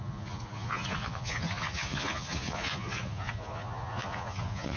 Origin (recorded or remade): remade